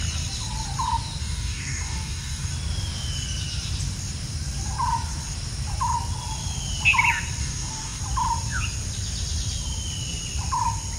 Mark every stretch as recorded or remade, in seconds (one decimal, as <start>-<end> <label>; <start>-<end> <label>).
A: 0.0-1.2 recorded; 1.2-2.5 remade; 2.5-7.4 recorded; 7.4-8.0 remade; 8.0-11.0 recorded